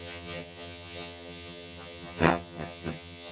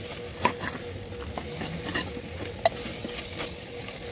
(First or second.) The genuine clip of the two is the second